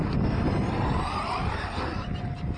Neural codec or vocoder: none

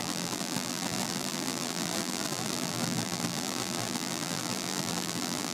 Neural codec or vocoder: vocoder, BigVGAN v2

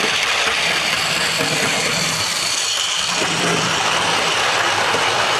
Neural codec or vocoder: vocoder, BigVGAN v2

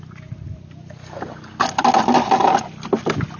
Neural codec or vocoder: none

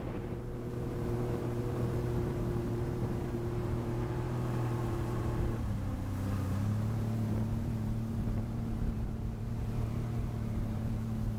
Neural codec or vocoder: vocoder, BigVGAN v2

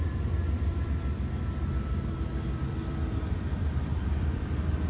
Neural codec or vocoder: vocoder, BigVGAN v2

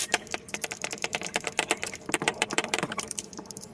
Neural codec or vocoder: vocoder, BigVGAN v2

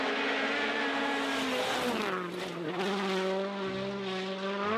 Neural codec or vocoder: none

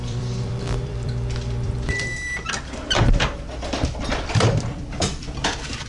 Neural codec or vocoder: vocoder, BigVGAN v2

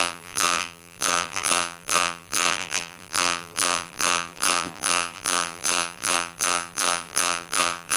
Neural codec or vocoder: vocoder, BigVGAN v2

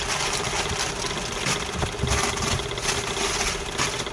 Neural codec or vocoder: none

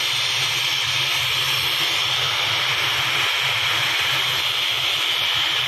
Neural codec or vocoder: none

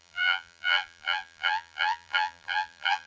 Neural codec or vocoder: vocoder, BigVGAN v2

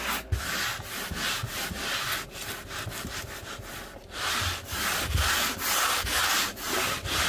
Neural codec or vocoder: none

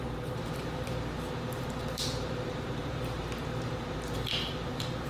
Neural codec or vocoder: vocoder, BigVGAN v2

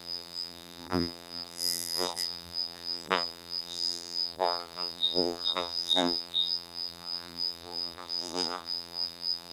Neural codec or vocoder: vocoder, BigVGAN v2